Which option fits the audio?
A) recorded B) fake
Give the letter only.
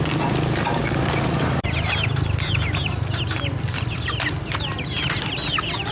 B